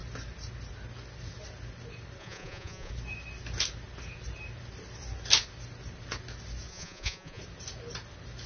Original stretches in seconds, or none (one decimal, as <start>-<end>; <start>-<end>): 0.0-2.2; 2.9-6.7; 7.4-8.5